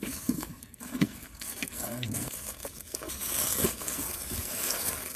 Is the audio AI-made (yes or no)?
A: yes